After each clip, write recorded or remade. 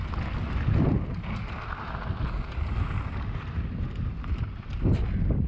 recorded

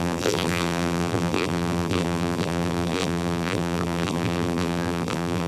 remade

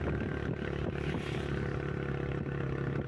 recorded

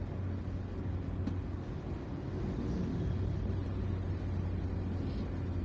recorded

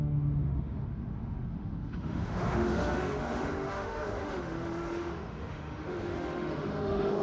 remade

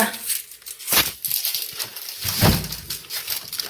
recorded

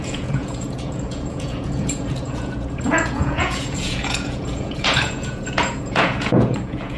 remade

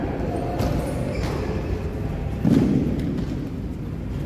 recorded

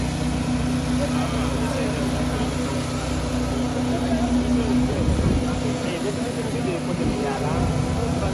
recorded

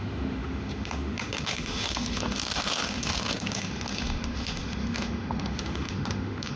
remade